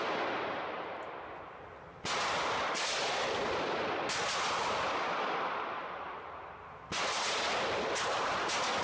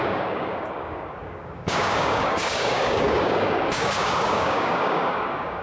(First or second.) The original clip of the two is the first